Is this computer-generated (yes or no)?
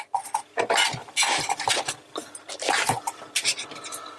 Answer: no